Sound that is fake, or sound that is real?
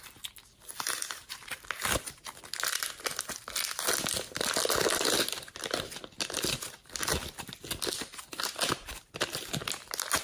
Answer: real